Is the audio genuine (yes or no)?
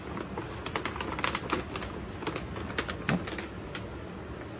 yes